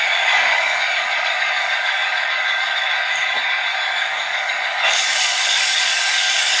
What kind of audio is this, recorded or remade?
remade